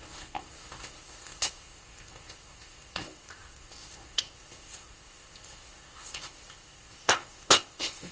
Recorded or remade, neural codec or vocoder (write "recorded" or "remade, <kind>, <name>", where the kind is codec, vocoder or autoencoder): remade, codec, ZipCodec